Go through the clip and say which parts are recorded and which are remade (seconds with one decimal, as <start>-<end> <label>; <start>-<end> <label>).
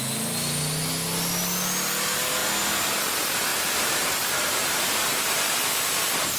0.0-3.5 recorded; 3.5-4.9 remade; 4.9-6.4 recorded